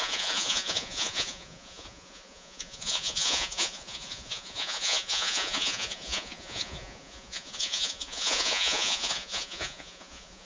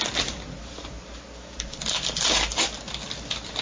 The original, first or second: second